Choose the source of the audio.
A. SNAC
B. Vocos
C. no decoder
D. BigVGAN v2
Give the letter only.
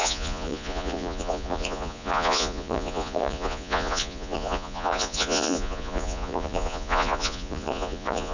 B